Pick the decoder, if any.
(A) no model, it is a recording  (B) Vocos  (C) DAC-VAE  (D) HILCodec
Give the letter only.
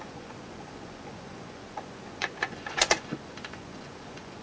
B